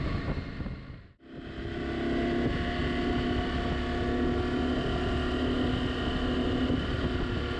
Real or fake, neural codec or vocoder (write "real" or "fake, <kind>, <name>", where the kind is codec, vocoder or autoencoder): real